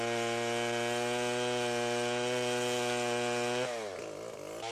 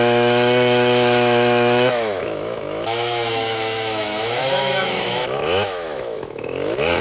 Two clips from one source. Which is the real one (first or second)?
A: first